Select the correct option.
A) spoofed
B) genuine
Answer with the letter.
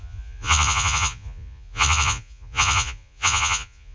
A